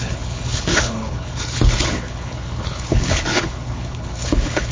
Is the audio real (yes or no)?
no